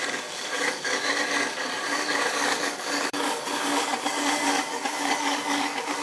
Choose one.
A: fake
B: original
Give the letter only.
A